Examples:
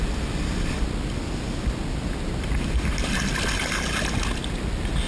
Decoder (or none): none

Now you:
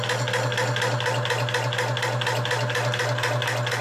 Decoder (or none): none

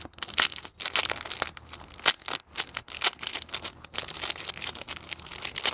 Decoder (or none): none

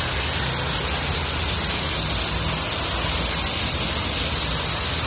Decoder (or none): none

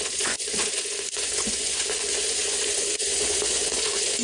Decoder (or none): vocoder, Vocos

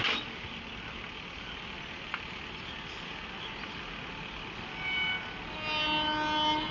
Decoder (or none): none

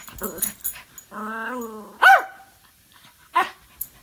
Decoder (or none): none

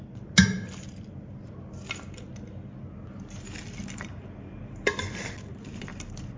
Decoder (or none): none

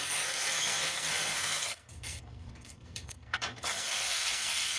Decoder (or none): codec, SNAC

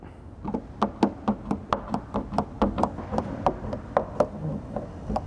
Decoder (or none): none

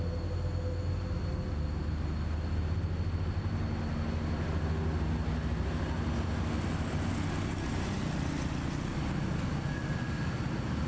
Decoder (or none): none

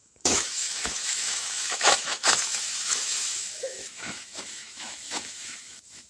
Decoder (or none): autoencoder, DAC-VAE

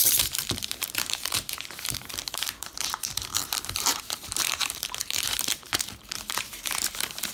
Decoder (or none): vocoder, BigVGAN v2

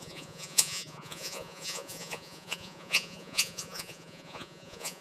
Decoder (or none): vocoder, Vocos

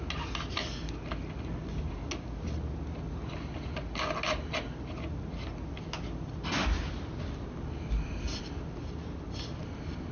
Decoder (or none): none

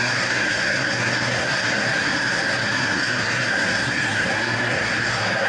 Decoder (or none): codec, SNAC